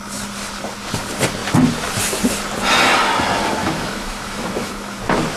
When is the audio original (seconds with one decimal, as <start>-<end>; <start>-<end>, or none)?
0.0-3.6; 5.0-5.4

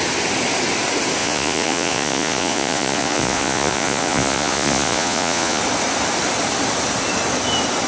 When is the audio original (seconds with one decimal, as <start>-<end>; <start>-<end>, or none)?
0.0-1.2; 5.6-7.9

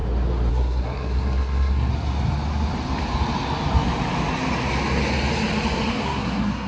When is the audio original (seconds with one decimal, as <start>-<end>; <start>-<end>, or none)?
0.0-0.5; 1.9-5.9